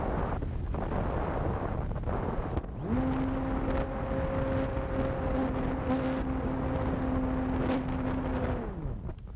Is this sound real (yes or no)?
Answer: yes